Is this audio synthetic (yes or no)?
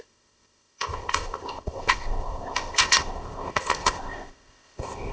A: yes